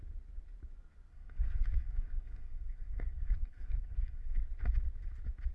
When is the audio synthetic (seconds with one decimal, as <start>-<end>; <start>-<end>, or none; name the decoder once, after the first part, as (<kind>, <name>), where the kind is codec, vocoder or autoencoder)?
1.1-4.4 (codec, SNAC)